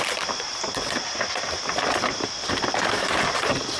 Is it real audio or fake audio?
fake